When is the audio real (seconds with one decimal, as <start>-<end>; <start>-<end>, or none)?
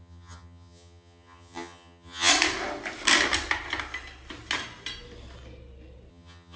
2.3-6.1